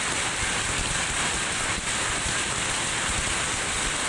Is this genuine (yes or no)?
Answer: yes